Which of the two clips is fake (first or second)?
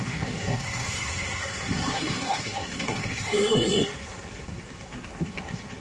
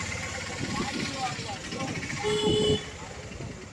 first